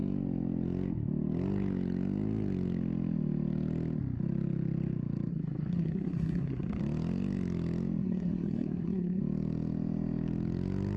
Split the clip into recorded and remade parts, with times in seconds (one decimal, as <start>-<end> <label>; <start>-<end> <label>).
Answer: 0.0-5.3 recorded; 5.3-6.8 remade; 6.8-8.0 recorded; 8.0-9.2 remade; 9.2-11.0 recorded